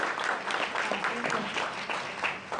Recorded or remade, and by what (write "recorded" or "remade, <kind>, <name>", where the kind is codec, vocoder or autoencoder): recorded